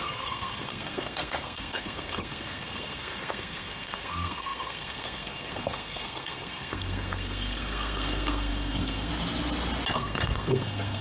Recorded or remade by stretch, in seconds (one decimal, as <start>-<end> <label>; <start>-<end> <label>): 0.0-9.1 remade; 9.1-9.9 recorded; 9.9-11.0 remade